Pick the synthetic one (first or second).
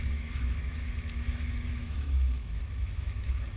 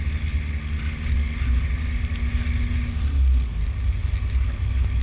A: first